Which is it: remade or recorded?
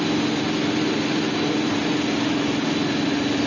recorded